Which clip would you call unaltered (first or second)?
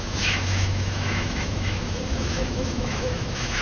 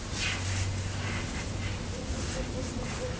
second